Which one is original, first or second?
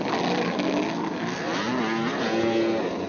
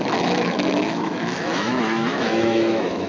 first